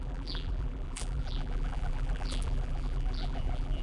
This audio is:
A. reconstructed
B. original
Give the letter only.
A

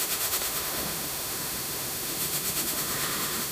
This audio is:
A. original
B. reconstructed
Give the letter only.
B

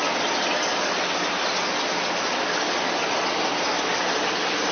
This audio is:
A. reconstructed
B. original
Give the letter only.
B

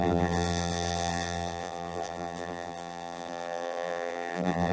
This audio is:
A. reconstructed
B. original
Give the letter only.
A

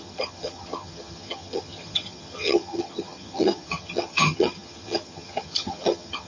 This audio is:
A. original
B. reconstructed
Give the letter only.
B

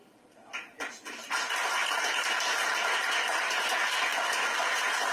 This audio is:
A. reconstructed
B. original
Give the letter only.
B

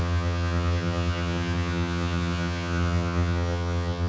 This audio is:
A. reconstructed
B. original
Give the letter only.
A